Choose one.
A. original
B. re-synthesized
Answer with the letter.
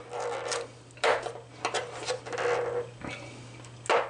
A